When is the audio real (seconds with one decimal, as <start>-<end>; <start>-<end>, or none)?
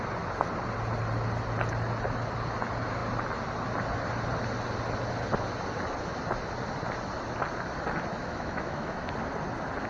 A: 0.0-8.2; 9.1-9.9